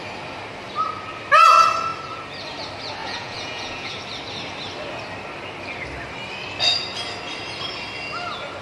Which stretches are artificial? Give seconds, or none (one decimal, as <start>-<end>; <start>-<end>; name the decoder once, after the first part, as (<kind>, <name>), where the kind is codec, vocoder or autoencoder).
3.0-3.9 (vocoder, Vocos)